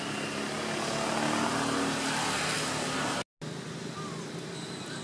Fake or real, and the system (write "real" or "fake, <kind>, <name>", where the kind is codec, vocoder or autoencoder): real